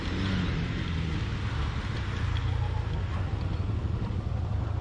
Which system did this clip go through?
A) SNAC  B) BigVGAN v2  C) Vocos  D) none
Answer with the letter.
D